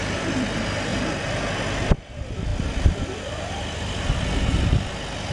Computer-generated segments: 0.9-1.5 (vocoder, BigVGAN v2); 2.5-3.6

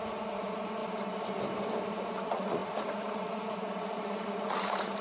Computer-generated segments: 0.0-0.8 (vocoder, Vocos); 1.9-5.0

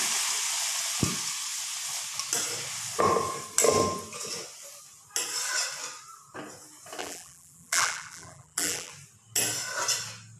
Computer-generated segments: 7.0-8.9 (vocoder, BigVGAN v2)

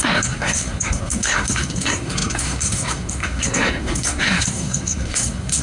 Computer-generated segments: 0.0-5.6 (codec, SNAC)

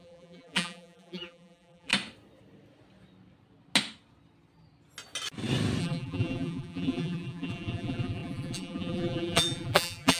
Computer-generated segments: 0.0-1.9 (vocoder, BigVGAN v2); 5.8-10.2

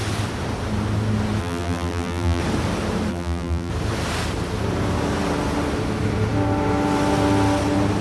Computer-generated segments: 1.4-2.4 (vocoder, BigVGAN v2); 3.1-3.7